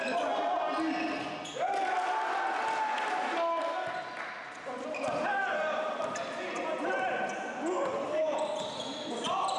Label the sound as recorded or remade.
recorded